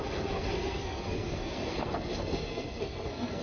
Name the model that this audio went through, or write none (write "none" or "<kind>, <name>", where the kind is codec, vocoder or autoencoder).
codec, SNAC